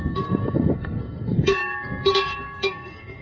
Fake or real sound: fake